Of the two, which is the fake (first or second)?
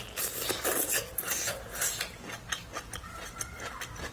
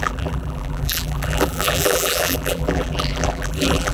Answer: second